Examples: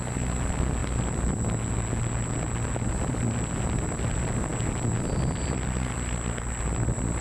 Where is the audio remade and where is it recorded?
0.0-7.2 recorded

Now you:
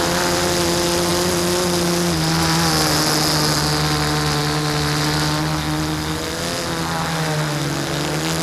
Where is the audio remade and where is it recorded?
0.0-8.4 recorded

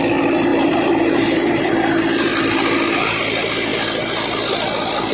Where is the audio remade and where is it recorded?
0.0-0.5 recorded; 0.5-1.7 remade; 1.7-5.1 recorded

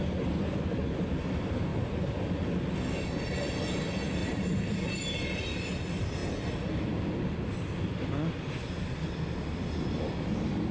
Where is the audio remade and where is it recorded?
0.0-1.7 recorded; 1.7-2.2 remade; 2.2-4.2 recorded; 4.2-5.2 remade; 5.2-10.7 recorded

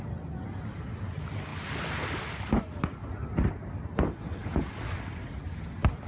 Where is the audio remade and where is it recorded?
0.0-6.1 recorded